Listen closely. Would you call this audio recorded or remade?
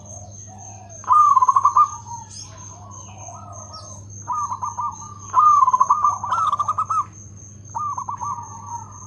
recorded